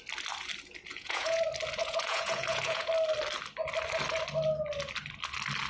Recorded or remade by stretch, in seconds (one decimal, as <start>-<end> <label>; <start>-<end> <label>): 0.0-0.9 recorded; 0.9-1.4 remade; 1.4-1.8 recorded; 1.8-2.9 remade; 2.9-5.7 recorded